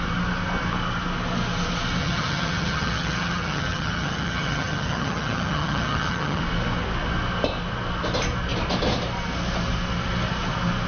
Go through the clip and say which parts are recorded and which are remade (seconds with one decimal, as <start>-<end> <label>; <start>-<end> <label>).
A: 0.0-2.0 recorded; 2.0-6.4 remade; 6.4-10.9 recorded